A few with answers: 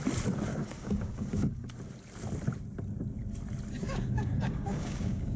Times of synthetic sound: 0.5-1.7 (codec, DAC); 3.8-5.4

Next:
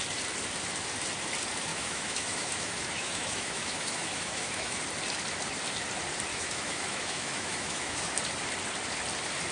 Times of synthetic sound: 1.7-4.8 (autoencoder, DAC-VAE); 6.3-8.2

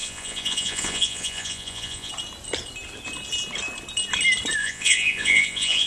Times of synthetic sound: 0.0-2.1 (vocoder, Vocos); 4.6-5.9

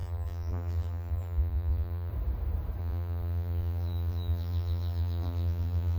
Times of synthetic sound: 0.0-2.1 (vocoder, BigVGAN v2); 2.8-6.0

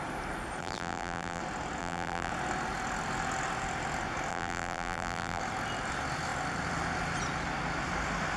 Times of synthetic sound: 0.6-1.4 (vocoder, BigVGAN v2); 1.8-2.3; 4.3-5.4

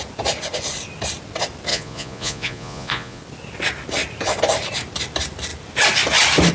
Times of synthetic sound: 1.7-3.2 (vocoder, Vocos)